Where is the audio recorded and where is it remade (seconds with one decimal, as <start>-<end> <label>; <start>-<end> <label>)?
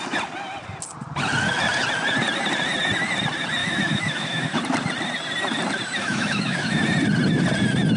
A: 0.0-3.6 recorded; 3.6-4.6 remade; 4.6-6.0 recorded; 6.0-6.8 remade; 6.8-8.0 recorded